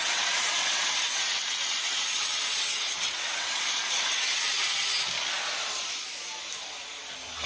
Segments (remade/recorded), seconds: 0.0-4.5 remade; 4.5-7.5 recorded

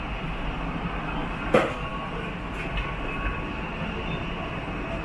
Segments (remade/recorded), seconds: 0.0-5.0 recorded

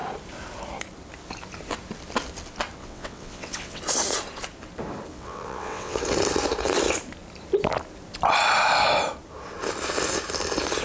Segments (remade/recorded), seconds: 0.0-2.8 recorded; 2.8-3.8 remade; 3.8-5.1 recorded; 5.1-6.0 remade; 6.0-10.8 recorded

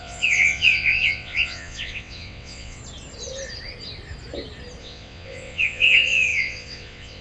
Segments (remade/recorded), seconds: 0.0-2.8 remade; 2.8-4.8 recorded; 4.8-7.2 remade

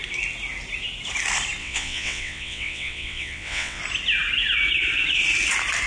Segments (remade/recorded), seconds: 0.0-1.6 recorded; 1.6-3.8 remade; 3.8-5.9 recorded